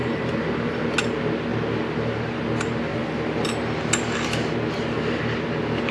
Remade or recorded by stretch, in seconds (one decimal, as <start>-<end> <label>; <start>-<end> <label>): 0.0-0.8 remade; 0.8-5.9 recorded